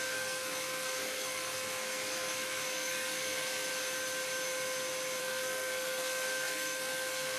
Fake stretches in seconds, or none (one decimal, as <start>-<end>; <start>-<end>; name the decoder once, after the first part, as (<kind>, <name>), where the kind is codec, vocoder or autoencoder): 0.0-3.7 (codec, SNAC); 5.2-7.4